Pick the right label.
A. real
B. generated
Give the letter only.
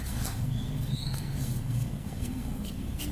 B